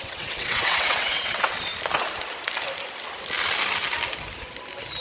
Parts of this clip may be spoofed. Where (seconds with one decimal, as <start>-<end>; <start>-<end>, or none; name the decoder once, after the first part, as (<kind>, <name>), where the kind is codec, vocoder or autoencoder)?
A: 0.0-1.7 (vocoder, WaveNeXt)

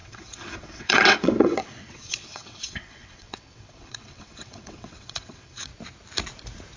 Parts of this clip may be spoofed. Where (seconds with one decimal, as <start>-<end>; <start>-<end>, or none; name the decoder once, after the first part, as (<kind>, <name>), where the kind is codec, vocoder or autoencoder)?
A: 0.0-5.7 (vocoder, WaveNeXt)

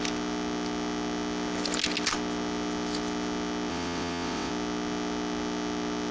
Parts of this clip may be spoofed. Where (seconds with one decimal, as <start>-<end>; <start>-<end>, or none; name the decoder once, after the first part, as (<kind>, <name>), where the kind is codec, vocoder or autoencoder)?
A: 3.7-4.5 (vocoder, WaveNeXt)

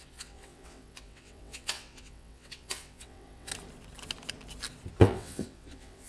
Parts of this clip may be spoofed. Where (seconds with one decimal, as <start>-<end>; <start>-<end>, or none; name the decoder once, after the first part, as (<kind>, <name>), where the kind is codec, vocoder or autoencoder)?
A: 0.0-3.5 (vocoder, WaveNeXt); 5.0-6.1

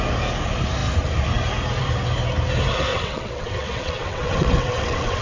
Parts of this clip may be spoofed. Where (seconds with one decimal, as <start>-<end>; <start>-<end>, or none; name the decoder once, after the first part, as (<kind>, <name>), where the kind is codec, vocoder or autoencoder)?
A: 2.9-5.2 (vocoder, WaveNeXt)

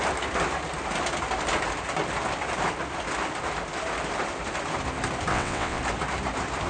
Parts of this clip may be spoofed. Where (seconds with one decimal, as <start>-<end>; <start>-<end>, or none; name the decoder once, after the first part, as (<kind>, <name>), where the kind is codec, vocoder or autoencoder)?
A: 5.3-5.8 (vocoder, WaveNeXt)